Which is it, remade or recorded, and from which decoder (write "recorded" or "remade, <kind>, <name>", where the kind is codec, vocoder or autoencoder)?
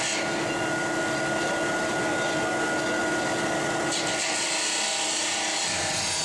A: recorded